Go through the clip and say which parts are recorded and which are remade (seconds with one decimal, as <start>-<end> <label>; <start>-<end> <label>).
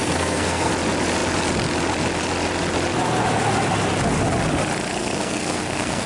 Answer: 0.0-0.7 remade; 0.7-5.0 recorded; 5.0-6.1 remade